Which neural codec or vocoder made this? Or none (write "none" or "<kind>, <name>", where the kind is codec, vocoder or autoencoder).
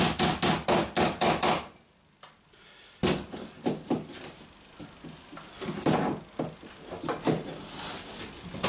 none